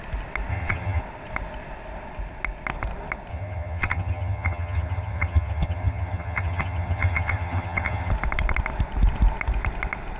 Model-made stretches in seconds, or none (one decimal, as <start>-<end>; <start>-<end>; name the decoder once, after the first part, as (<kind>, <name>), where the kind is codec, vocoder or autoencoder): 0.5-1.0 (vocoder, HiFi-GAN); 3.3-8.1